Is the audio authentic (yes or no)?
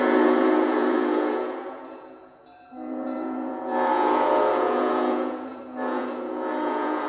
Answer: no